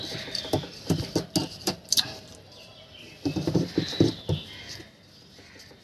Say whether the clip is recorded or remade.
recorded